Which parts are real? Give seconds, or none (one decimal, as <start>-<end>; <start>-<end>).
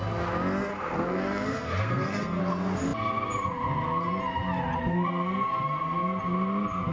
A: 0.0-0.7; 2.4-4.9; 6.2-6.9